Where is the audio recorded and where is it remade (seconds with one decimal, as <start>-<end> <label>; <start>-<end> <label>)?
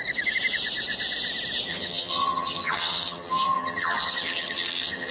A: 0.0-1.7 recorded; 1.7-5.1 remade